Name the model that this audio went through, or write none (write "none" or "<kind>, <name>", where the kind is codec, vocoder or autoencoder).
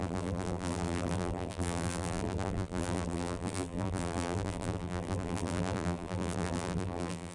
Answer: vocoder, BigVGAN v2